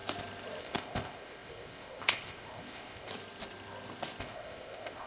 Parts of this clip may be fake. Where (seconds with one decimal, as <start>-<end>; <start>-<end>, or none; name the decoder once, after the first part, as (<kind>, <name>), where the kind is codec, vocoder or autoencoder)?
0.6-3.1 (codec, ZipCodec); 4.2-5.1

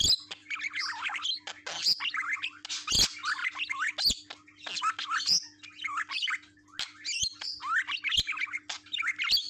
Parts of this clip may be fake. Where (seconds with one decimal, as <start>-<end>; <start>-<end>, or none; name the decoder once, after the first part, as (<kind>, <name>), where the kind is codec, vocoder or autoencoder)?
none